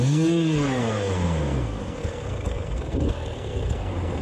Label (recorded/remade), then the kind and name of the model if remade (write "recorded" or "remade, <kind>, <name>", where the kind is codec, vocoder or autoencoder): remade, codec, SNAC